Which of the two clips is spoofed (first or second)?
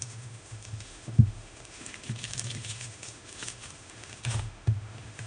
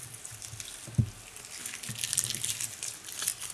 first